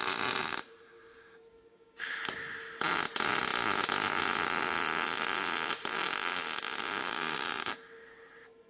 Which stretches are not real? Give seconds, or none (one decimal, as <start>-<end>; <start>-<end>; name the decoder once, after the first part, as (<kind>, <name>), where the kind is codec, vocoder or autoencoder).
0.4-2.0 (codec, DAC); 7.0-7.9